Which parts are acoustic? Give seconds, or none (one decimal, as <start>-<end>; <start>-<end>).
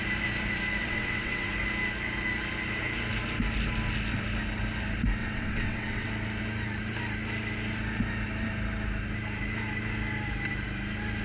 0.0-0.8; 1.5-5.2; 6.1-11.2